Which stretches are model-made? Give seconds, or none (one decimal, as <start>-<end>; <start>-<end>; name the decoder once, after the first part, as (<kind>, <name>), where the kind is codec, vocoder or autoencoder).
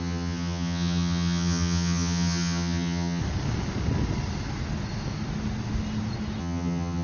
0.0-3.2 (vocoder, HiFi-GAN); 6.4-7.0